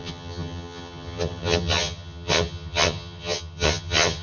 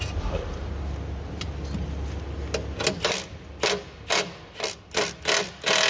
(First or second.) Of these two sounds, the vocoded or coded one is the first